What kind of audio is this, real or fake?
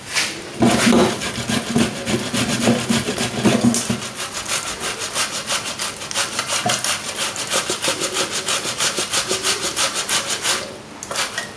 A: real